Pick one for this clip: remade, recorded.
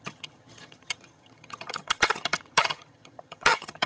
remade